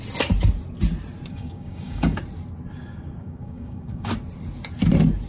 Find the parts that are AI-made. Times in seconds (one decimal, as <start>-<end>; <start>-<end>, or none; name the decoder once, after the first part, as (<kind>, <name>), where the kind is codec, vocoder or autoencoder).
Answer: 1.3-2.2 (codec, DAC); 3.2-4.1